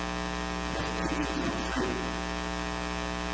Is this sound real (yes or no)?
yes